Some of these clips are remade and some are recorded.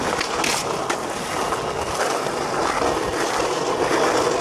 recorded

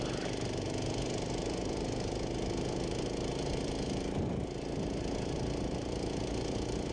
recorded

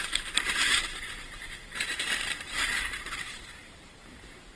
remade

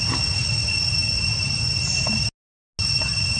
recorded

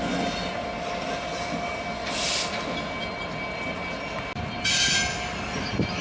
recorded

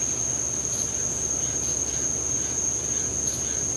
recorded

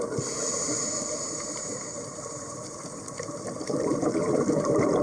remade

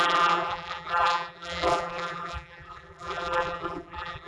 remade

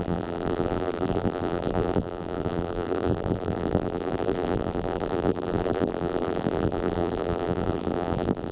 remade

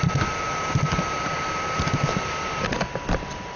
remade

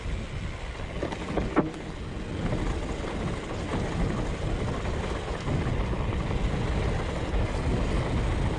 recorded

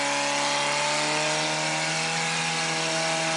recorded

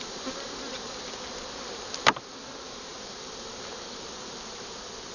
remade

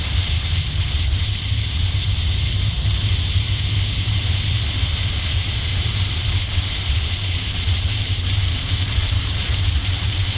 remade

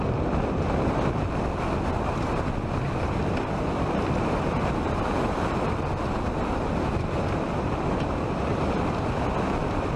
recorded